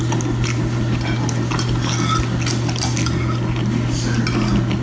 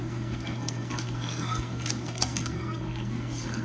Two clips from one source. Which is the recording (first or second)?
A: first